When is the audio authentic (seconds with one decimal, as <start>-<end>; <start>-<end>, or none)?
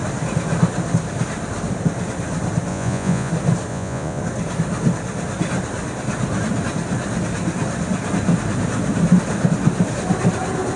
0.0-2.7; 3.3-3.7; 4.2-10.8